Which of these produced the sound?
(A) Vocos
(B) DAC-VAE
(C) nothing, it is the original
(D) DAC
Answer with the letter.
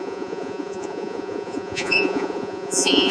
A